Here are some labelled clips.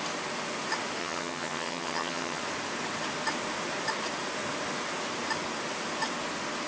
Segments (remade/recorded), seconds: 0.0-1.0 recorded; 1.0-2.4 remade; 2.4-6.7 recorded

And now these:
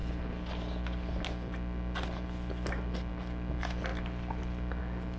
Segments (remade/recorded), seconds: 0.0-5.2 recorded

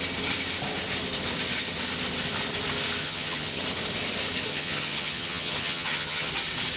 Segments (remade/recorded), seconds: 0.0-3.0 recorded; 3.0-3.6 remade; 3.6-4.5 recorded; 4.5-6.3 remade; 6.3-6.8 recorded